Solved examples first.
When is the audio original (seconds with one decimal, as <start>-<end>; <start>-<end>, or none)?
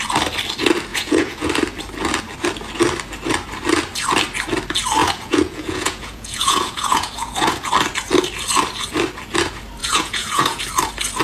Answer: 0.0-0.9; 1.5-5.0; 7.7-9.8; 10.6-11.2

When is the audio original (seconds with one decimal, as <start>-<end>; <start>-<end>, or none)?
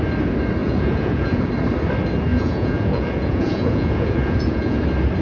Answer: 0.0-0.6; 1.5-2.3; 4.8-5.2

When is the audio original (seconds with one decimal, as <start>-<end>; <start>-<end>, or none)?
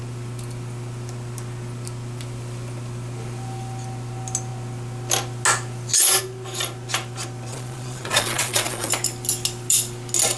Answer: 0.0-7.5; 8.9-10.4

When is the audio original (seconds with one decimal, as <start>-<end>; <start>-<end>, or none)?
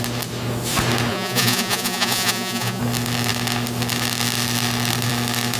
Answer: 0.0-1.1; 2.8-5.6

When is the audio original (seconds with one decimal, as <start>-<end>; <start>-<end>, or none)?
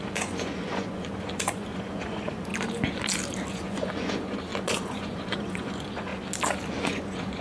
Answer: 2.5-3.5; 6.1-6.8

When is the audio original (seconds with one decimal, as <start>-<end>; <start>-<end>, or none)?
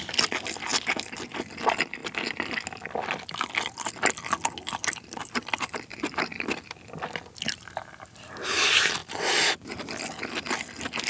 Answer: 0.0-11.1